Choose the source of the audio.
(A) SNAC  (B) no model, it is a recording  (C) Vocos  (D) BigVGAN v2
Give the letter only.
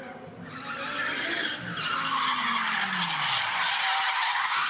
B